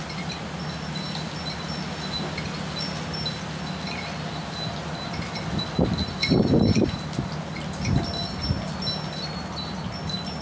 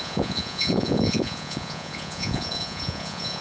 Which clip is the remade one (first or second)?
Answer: second